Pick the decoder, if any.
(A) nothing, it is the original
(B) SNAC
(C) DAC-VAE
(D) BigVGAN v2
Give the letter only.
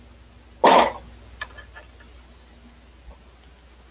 A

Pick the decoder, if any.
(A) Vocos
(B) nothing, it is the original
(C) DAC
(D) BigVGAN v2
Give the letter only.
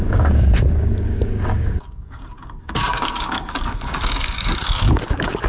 C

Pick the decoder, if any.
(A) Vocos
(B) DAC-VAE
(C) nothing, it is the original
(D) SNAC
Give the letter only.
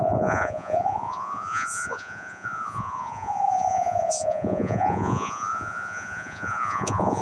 A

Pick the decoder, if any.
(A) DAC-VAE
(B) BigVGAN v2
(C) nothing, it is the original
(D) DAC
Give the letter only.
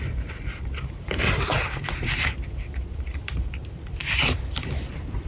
B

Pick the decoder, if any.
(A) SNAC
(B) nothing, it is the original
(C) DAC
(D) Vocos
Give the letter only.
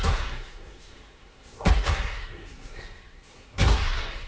A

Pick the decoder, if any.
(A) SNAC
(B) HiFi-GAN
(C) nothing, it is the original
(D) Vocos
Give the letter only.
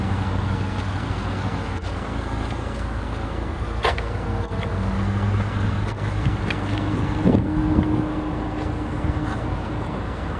A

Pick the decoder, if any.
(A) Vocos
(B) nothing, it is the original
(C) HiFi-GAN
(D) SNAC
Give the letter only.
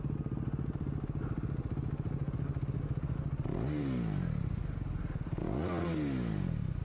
B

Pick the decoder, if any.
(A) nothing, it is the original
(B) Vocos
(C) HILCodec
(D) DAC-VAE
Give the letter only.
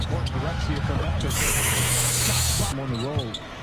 D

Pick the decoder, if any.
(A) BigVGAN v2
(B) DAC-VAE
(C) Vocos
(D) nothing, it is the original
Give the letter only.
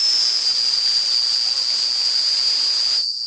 D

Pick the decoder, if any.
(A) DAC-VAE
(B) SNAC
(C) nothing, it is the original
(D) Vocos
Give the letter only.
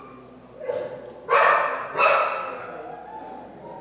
C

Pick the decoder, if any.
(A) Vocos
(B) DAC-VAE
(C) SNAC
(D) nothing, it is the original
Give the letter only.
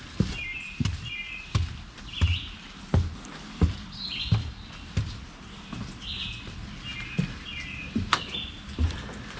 D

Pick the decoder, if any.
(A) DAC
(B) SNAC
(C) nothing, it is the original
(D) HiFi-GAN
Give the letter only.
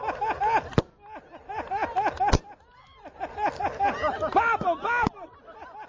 C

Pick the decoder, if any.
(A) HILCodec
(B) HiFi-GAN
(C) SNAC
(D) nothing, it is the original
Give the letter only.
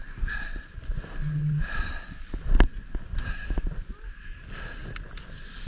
D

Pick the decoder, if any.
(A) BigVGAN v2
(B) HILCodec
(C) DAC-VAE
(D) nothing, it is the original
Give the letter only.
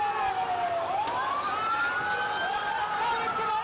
D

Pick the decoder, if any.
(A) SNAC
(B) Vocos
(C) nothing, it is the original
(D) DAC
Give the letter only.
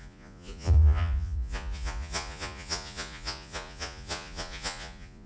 B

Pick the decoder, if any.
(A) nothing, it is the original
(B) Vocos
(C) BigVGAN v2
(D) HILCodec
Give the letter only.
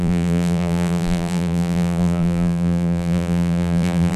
C